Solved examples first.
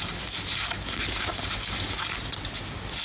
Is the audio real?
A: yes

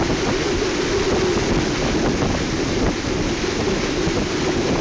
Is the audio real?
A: yes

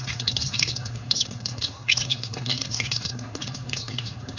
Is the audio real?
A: no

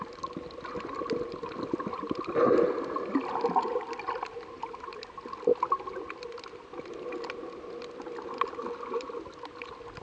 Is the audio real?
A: yes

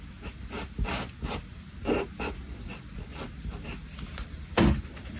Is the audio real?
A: yes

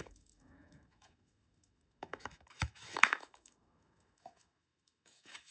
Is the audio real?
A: no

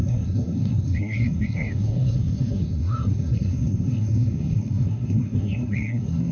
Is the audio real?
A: no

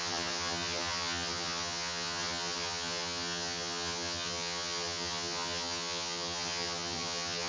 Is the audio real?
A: no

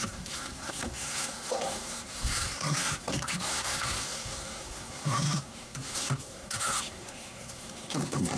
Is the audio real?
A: no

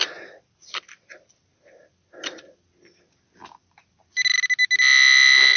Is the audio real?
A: yes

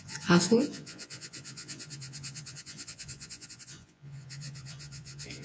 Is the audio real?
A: no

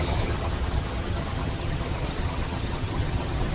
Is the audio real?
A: no